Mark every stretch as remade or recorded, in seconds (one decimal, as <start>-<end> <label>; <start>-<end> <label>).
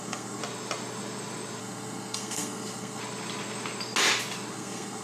0.0-0.4 remade; 0.4-1.6 recorded; 1.6-3.0 remade; 3.0-4.5 recorded; 4.5-5.0 remade